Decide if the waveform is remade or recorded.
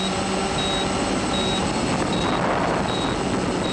recorded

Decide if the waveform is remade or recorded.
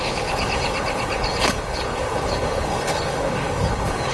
remade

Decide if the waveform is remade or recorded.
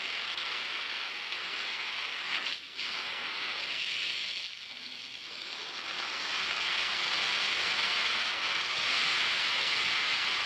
remade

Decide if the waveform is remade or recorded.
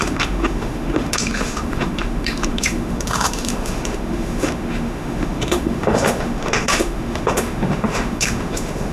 remade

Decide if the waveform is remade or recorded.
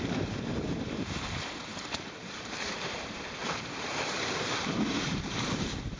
remade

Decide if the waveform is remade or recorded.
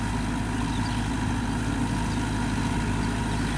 recorded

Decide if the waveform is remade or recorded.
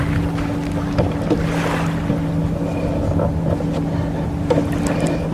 recorded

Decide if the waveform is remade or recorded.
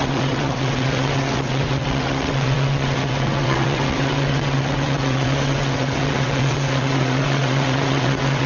remade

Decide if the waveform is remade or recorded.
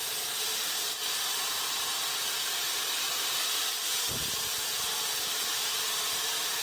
remade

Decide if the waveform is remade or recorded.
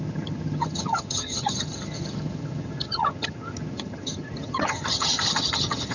remade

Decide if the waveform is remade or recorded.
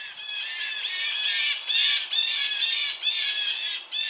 recorded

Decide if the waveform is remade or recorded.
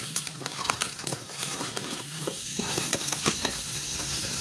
remade